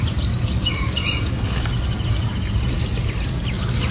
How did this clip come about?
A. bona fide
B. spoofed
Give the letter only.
A